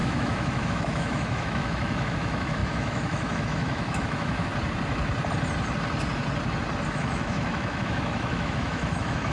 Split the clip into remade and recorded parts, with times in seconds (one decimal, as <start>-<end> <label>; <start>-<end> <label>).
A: 0.0-4.5 remade; 4.5-6.9 recorded; 6.9-9.3 remade